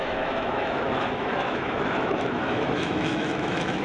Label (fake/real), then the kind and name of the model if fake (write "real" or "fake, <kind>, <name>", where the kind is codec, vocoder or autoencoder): fake, autoencoder, DAC-VAE